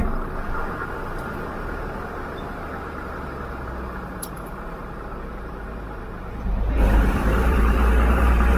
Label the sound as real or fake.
fake